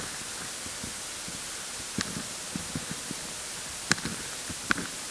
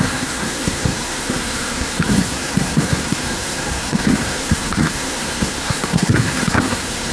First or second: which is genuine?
first